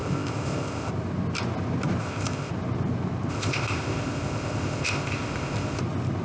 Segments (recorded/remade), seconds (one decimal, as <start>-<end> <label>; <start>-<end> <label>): 0.0-0.9 remade; 0.9-2.0 recorded; 2.0-2.5 remade; 2.5-3.3 recorded; 3.3-5.8 remade; 5.8-6.2 recorded